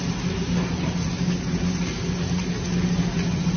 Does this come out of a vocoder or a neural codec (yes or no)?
no